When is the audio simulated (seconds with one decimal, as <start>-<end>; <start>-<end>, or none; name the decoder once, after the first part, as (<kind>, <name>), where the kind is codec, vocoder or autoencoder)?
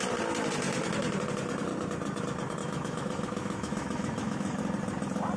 2.6-4.6 (autoencoder, DAC-VAE)